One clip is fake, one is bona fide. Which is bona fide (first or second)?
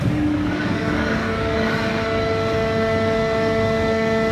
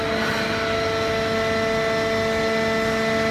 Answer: second